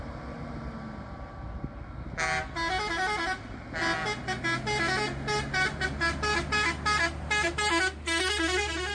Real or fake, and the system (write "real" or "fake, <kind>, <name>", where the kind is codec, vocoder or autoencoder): real